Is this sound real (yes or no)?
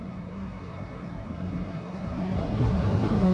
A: no